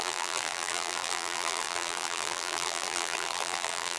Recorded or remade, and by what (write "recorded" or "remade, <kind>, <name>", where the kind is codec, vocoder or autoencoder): remade, vocoder, BigVGAN v2